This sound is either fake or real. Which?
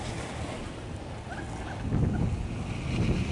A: real